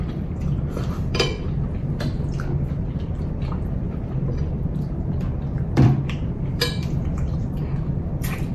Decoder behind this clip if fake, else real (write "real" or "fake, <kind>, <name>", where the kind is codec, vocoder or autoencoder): fake, vocoder, BigVGAN v2